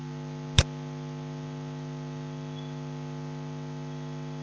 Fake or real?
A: real